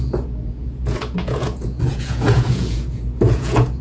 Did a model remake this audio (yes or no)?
yes